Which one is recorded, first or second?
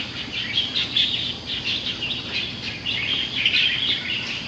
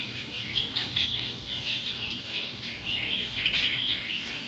first